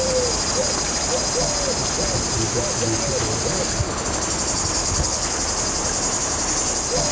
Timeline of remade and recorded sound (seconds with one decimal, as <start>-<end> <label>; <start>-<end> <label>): 0.0-4.8 recorded; 4.8-5.4 remade; 5.4-7.1 recorded

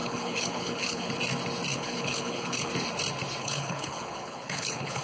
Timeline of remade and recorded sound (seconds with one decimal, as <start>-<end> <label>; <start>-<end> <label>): 0.0-1.1 remade; 1.1-1.7 recorded; 1.7-2.7 remade; 2.7-3.4 recorded; 3.4-5.0 remade

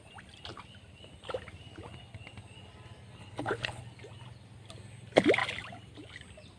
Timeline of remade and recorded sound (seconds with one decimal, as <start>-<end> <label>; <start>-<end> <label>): 0.0-3.2 recorded; 3.2-3.8 remade; 3.8-6.6 recorded

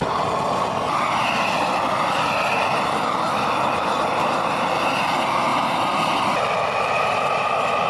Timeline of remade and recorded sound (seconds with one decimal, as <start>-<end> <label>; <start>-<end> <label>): 0.0-7.9 recorded

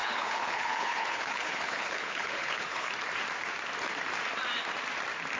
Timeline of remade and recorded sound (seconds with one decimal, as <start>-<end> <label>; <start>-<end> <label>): 0.0-2.9 remade; 2.9-5.4 recorded